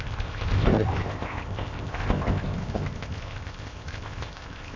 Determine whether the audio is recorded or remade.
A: remade